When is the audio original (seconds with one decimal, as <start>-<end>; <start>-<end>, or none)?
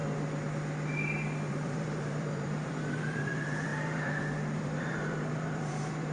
0.0-1.5